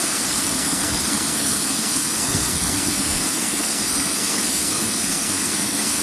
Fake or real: fake